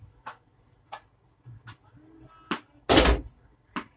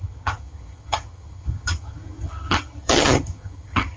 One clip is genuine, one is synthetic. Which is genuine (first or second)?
first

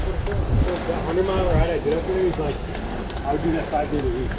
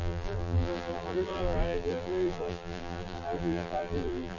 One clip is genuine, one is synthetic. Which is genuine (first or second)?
first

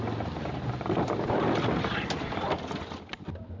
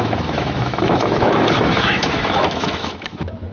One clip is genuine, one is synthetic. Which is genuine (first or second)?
first